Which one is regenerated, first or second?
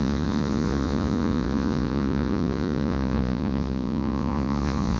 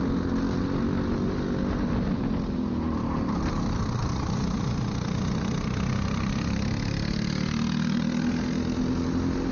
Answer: first